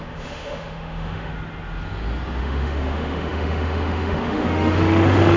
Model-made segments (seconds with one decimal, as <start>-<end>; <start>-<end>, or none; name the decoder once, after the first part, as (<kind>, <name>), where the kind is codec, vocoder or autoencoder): 0.0-1.3 (autoencoder, DAC-VAE); 2.4-5.4